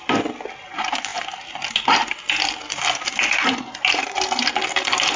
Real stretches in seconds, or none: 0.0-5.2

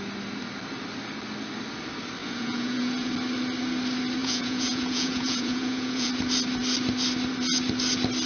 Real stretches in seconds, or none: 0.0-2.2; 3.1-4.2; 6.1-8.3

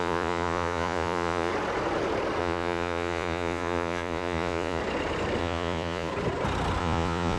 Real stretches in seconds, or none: 1.5-2.4; 4.8-5.4; 6.1-6.8

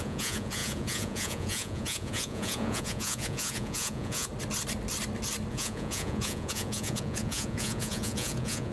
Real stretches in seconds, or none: 4.3-5.5

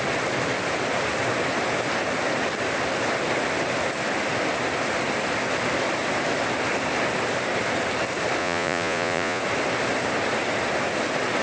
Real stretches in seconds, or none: 0.0-8.4; 9.4-11.4

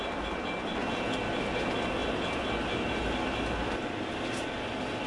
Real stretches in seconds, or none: 0.0-5.1